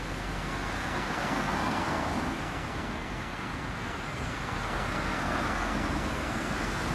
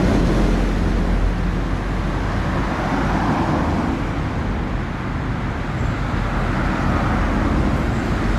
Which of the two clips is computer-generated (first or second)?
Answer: first